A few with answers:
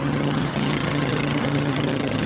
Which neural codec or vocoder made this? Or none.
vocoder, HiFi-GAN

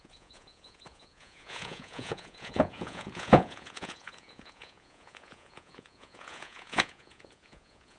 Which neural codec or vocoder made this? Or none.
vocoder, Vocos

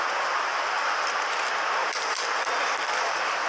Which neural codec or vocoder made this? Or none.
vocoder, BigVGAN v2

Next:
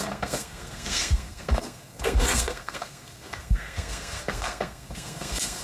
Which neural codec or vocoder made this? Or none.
codec, SNAC